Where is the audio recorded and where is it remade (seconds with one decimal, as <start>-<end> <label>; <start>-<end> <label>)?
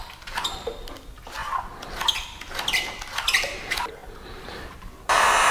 0.0-5.5 recorded